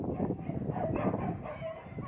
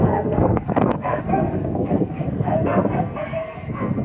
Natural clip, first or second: first